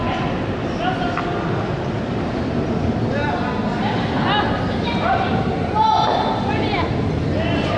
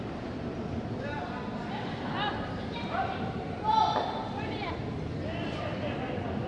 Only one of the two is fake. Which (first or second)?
second